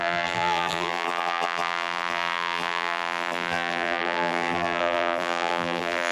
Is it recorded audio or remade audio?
remade